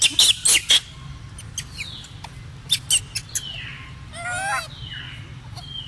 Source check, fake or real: real